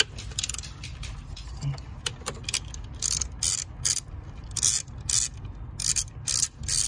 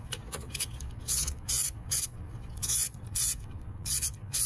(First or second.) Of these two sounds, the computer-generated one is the second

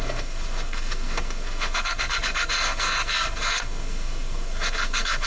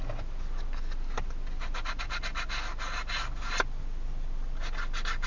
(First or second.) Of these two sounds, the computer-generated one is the first